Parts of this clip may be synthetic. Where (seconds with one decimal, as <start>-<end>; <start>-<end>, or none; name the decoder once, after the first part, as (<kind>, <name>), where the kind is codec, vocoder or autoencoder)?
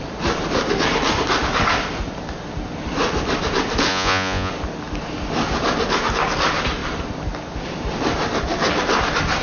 3.9-4.5 (vocoder, Vocos)